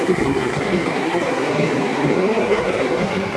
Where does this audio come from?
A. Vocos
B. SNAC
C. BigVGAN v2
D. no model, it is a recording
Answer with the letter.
B